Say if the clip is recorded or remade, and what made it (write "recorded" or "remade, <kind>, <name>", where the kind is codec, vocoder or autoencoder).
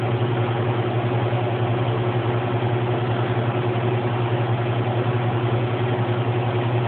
recorded